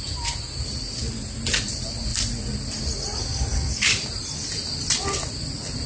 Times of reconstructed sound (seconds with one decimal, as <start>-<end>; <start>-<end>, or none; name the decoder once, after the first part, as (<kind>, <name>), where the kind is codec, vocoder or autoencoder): none